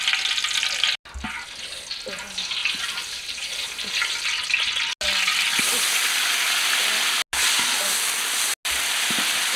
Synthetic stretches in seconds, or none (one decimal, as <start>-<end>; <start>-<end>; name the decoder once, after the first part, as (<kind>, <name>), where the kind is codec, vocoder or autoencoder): 2.6-4.2 (vocoder, BigVGAN v2)